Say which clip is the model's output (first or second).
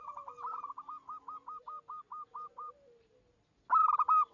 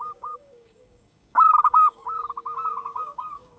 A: second